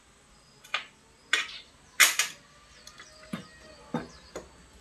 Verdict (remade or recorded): recorded